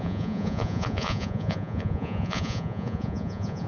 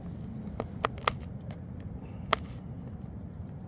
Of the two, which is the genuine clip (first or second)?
second